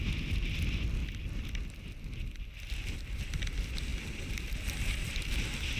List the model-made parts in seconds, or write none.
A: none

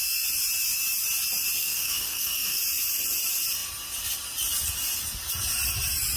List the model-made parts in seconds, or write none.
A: 1.6-2.6 (codec, SNAC)

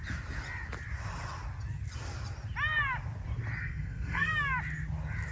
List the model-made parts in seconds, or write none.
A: 3.6-4.3 (codec, SNAC)

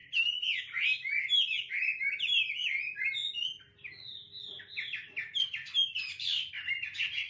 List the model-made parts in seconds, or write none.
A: none

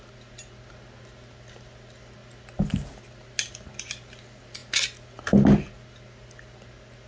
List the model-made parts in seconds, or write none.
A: none

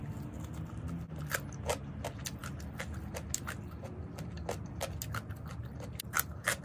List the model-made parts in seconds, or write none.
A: none

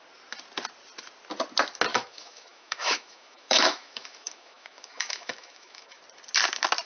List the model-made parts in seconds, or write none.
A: 1.9-6.0 (autoencoder, DAC-VAE)

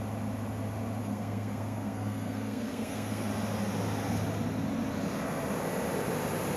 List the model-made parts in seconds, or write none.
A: 1.0-3.3 (codec, SNAC)